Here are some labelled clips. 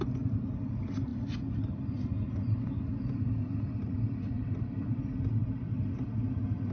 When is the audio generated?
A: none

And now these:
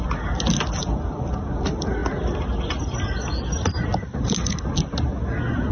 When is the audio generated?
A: none

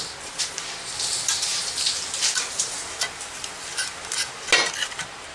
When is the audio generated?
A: none

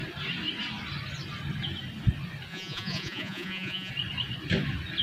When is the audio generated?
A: 2.5-3.9 (vocoder, Vocos)

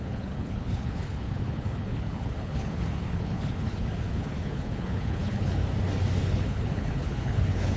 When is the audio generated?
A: 0.0-5.6 (codec, HILCodec); 6.3-7.8